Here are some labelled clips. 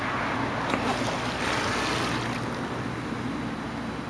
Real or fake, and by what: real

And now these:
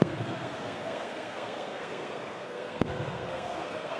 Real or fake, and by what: fake, codec, SNAC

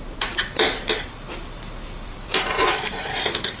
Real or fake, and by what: fake, vocoder, BigVGAN v2